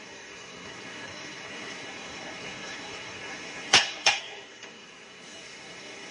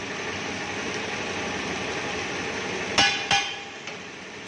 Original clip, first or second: second